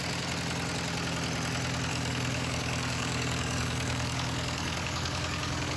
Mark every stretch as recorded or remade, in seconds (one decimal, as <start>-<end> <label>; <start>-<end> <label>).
0.0-1.9 recorded; 1.9-5.8 remade